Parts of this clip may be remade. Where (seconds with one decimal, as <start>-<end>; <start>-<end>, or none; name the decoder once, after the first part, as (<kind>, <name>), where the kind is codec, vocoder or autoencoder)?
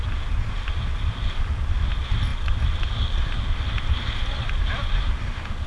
none